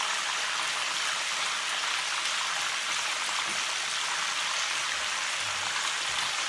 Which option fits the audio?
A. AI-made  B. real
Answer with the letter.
B